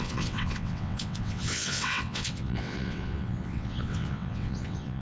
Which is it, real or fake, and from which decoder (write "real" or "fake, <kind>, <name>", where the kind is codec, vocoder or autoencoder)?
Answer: fake, vocoder, WaveNeXt